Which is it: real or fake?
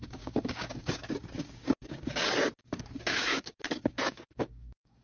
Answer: fake